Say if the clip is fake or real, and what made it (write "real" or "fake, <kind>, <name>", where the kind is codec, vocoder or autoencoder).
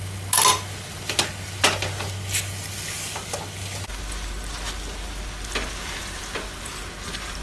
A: real